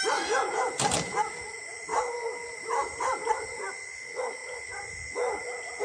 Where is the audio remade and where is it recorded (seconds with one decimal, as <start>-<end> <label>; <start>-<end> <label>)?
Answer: 0.0-1.9 recorded; 1.9-3.7 remade; 3.7-5.8 recorded

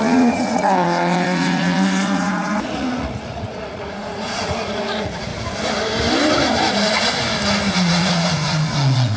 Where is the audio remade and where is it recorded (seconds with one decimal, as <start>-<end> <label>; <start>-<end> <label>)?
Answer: 0.0-5.3 remade; 5.3-7.7 recorded; 7.7-9.2 remade

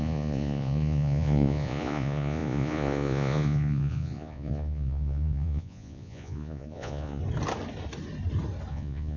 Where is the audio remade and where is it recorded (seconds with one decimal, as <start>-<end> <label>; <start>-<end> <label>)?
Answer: 0.0-7.2 remade; 7.2-8.7 recorded; 8.7-9.2 remade

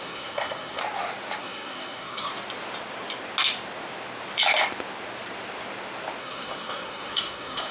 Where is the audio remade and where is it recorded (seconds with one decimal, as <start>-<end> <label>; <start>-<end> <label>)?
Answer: 0.0-0.8 remade; 0.8-1.4 recorded; 1.4-2.3 remade; 2.3-6.2 recorded; 6.2-7.7 remade

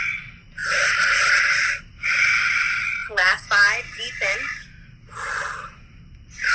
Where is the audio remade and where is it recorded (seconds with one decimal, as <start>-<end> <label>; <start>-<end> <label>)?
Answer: 0.0-0.6 recorded; 0.6-1.4 remade; 1.4-6.5 recorded

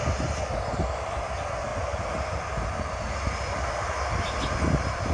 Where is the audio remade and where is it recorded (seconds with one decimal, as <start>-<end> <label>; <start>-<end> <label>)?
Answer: 0.0-5.1 recorded

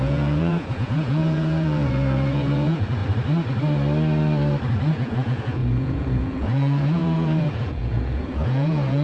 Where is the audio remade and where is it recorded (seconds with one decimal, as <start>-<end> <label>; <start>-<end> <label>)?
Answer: 0.0-3.0 remade; 3.0-4.9 recorded; 4.9-9.0 remade

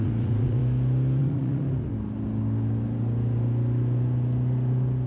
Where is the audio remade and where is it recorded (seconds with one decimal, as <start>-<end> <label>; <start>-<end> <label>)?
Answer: 0.0-0.6 remade; 0.6-1.2 recorded; 1.2-1.9 remade; 1.9-5.1 recorded